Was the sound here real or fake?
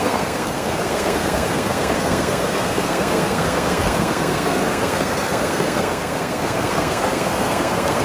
fake